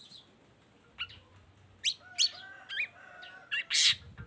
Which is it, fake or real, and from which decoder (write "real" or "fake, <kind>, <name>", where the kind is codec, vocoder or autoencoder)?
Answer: real